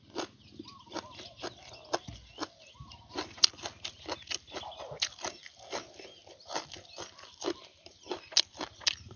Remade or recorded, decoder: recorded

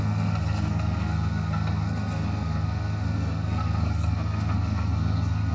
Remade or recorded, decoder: remade, codec, SNAC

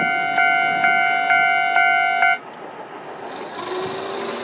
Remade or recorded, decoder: recorded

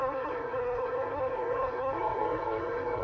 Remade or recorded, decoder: remade, codec, SNAC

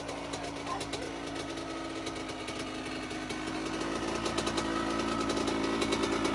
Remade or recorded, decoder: recorded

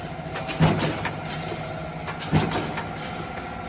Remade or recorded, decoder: recorded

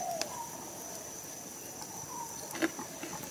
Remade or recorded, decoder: recorded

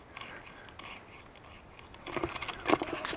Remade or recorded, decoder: recorded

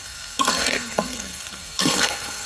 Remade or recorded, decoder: remade, codec, SNAC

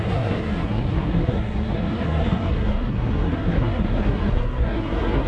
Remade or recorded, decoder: remade, codec, SNAC